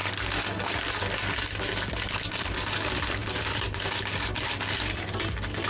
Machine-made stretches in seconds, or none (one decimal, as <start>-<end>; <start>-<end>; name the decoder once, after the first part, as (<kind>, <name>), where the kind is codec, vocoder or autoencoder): 2.3-5.7 (vocoder, BigVGAN v2)